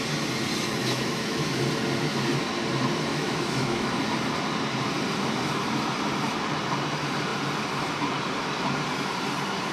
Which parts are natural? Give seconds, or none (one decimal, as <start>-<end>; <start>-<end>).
0.0-0.8; 1.6-3.1; 3.9-9.7